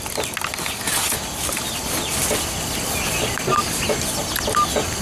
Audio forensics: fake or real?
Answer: real